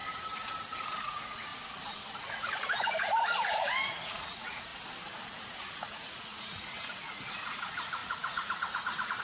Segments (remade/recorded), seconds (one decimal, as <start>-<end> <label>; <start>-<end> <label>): 0.0-0.8 recorded; 0.8-1.5 remade; 1.5-2.2 recorded; 2.2-4.7 remade; 4.7-5.7 recorded; 5.7-9.2 remade